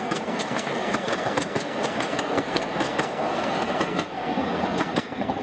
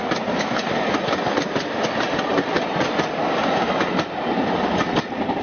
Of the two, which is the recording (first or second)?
second